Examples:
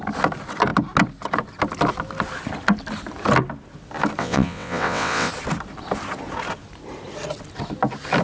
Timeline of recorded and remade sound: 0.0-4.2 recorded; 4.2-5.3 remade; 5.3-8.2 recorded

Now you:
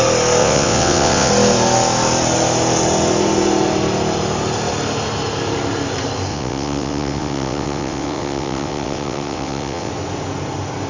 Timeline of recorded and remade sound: 0.0-0.4 recorded; 0.4-1.3 remade; 1.3-6.3 recorded; 6.3-9.9 remade; 9.9-10.9 recorded

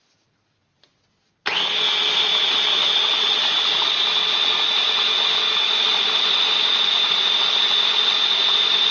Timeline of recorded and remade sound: 0.0-2.8 recorded; 2.8-3.4 remade; 3.4-8.9 recorded

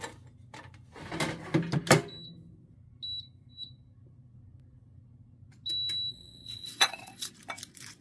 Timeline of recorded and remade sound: 0.0-6.1 recorded; 6.1-7.3 remade; 7.3-8.0 recorded

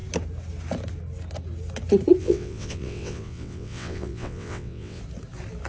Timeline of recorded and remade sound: 0.0-2.2 recorded; 2.2-5.0 remade; 5.0-5.7 recorded

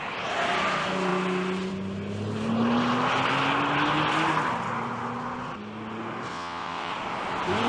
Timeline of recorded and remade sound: 0.0-6.3 recorded; 6.3-6.9 remade; 6.9-7.7 recorded

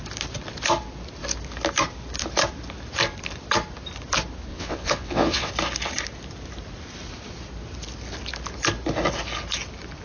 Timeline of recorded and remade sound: 0.0-4.5 recorded; 4.5-5.5 remade; 5.5-10.0 recorded